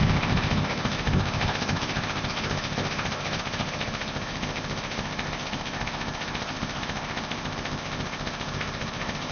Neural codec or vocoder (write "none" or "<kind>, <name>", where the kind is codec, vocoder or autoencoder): codec, ZipCodec